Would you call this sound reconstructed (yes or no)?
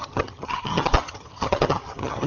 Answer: yes